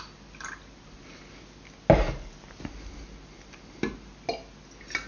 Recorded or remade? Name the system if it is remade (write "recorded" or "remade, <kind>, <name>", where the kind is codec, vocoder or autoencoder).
recorded